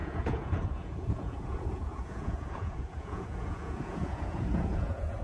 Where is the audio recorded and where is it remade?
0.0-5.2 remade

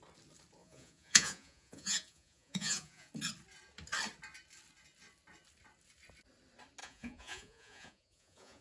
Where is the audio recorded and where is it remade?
0.0-0.6 recorded; 0.6-3.1 remade; 3.1-6.8 recorded; 6.8-8.6 remade